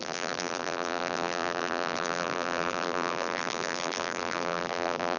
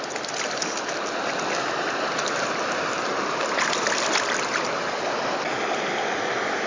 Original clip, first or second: second